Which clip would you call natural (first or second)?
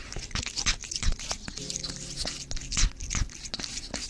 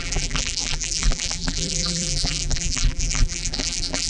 first